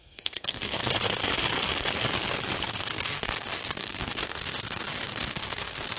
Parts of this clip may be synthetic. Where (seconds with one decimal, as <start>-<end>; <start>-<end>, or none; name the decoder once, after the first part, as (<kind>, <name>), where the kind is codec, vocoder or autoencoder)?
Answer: 0.0-1.2 (codec, SNAC); 2.7-6.0